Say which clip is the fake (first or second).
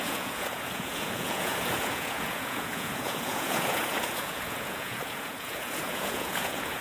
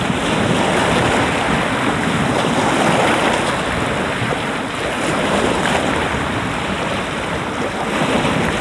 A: first